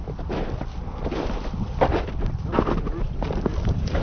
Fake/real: real